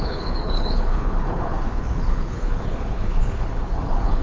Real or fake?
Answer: fake